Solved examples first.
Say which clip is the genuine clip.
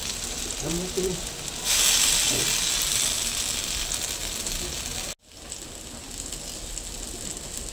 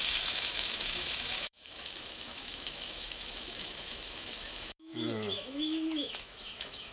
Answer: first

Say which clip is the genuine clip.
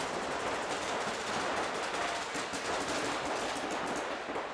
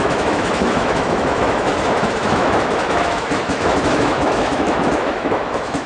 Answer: first